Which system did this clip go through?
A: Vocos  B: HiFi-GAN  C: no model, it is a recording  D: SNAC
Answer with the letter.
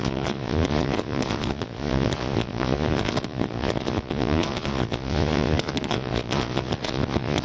A